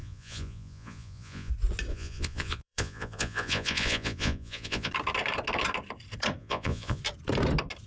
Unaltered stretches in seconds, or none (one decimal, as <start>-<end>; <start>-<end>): 1.5-1.9; 4.9-6.4; 7.0-7.9